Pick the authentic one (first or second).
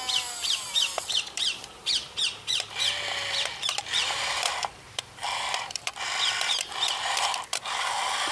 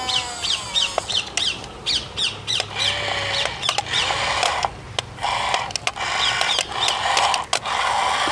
second